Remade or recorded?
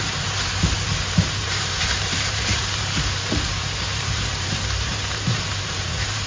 remade